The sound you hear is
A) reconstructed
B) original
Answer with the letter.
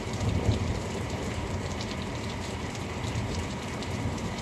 A